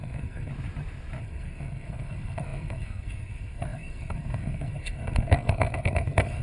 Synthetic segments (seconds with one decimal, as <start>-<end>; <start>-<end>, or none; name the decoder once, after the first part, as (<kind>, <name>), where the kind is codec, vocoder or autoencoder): 0.0-0.5 (codec, SNAC); 1.2-6.4